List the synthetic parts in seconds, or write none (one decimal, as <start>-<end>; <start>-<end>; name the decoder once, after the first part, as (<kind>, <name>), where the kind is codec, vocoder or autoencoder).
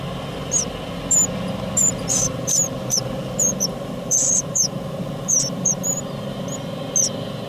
1.8-6.0 (vocoder, BigVGAN v2)